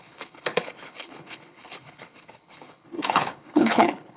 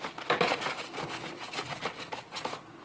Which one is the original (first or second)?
second